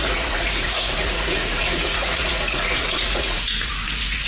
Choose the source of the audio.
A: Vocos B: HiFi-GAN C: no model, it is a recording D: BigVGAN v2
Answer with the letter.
A